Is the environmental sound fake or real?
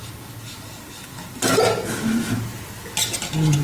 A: real